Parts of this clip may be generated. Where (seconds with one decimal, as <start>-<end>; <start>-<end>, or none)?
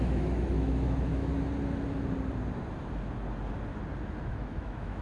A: 0.0-1.3; 4.3-5.0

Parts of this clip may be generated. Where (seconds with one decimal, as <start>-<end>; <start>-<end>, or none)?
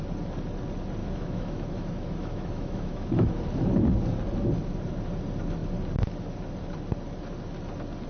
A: 1.0-3.4